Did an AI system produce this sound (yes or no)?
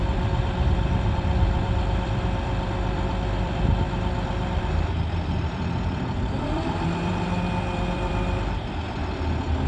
yes